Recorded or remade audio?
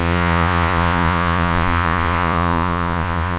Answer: remade